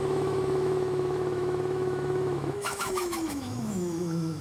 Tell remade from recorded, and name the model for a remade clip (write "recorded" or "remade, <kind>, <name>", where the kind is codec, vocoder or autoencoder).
remade, autoencoder, DAC-VAE